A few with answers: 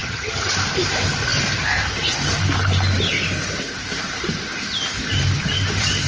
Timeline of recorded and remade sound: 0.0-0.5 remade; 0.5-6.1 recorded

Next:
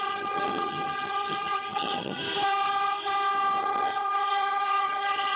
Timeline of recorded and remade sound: 0.0-2.2 remade; 2.2-3.6 recorded; 3.6-5.4 remade

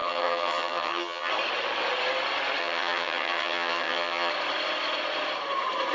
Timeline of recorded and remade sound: 0.0-1.3 remade; 1.3-2.6 recorded; 2.6-4.3 remade; 4.3-5.9 recorded

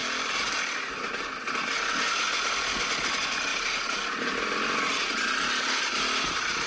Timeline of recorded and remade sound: 0.0-6.7 recorded

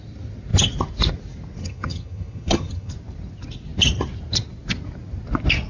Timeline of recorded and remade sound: 0.0-1.6 recorded; 1.6-2.9 remade; 2.9-5.7 recorded

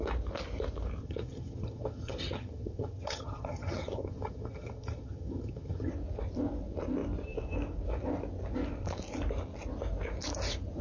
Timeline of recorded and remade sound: 0.0-1.0 recorded; 1.0-5.9 remade; 5.9-10.8 recorded